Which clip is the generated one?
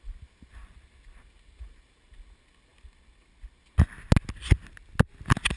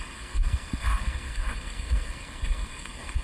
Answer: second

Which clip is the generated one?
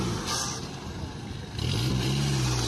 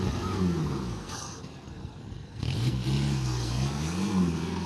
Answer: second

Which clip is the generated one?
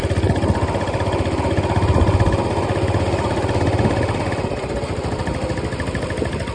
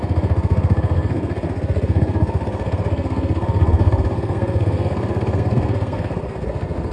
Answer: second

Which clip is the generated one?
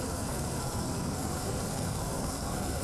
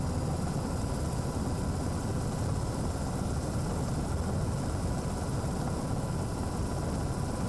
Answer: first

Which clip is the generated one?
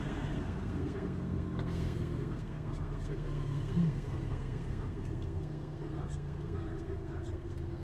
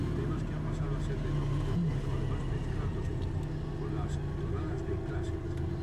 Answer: first